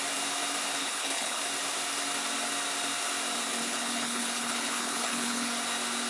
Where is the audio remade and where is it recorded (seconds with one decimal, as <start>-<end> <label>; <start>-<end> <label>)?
0.0-0.8 recorded; 0.8-1.4 remade; 1.4-3.6 recorded; 3.6-5.5 remade; 5.5-6.1 recorded